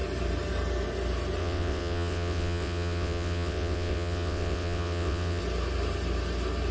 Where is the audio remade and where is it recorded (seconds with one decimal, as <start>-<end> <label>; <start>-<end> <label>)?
0.0-1.4 recorded; 1.4-5.4 remade; 5.4-6.7 recorded